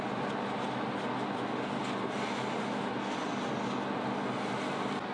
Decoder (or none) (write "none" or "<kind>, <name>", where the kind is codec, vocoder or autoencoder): none